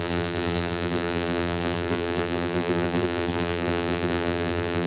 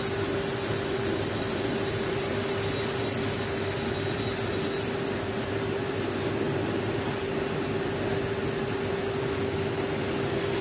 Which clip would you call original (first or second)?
second